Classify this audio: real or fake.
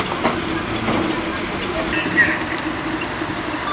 fake